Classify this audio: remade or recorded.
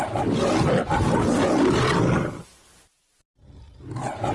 recorded